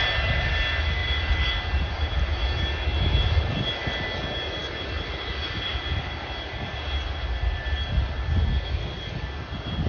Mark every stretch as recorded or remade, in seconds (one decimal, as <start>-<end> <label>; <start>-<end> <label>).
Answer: 0.0-0.5 remade; 0.5-1.0 recorded; 1.0-1.9 remade; 1.9-2.9 recorded; 2.9-3.6 remade; 3.6-9.9 recorded